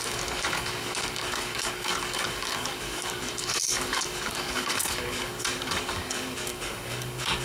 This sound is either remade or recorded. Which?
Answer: remade